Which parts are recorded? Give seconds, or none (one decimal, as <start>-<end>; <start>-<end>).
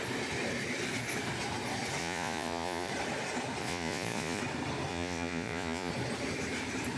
0.0-2.0; 2.9-3.6; 4.4-4.9; 5.9-7.0